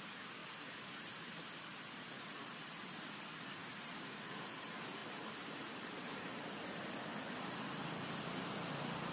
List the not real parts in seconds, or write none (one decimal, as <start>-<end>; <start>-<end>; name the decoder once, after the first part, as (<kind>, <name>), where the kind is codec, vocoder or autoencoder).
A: 0.4-1.5 (vocoder, BigVGAN v2); 3.6-4.6; 5.0-6.6